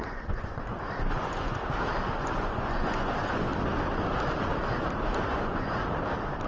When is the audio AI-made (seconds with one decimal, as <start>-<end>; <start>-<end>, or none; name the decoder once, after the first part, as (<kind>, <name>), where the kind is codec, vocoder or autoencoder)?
0.0-1.6 (vocoder, Vocos); 2.2-3.5; 5.2-5.8